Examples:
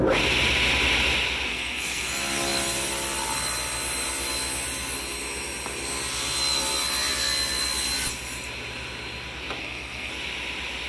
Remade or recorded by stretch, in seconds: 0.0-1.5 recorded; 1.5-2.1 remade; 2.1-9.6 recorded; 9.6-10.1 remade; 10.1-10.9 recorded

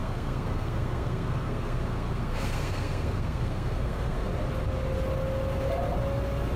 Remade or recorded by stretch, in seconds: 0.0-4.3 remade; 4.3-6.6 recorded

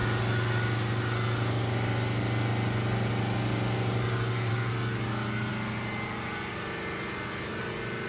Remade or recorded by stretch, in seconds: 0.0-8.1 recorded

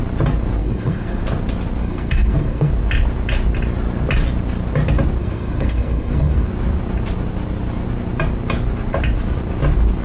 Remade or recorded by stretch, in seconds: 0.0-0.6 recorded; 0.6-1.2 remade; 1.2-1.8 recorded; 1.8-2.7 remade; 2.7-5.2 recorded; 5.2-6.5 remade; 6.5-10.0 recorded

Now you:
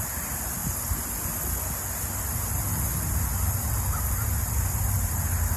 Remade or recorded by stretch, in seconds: 0.0-5.6 recorded